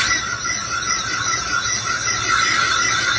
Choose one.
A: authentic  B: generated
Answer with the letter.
A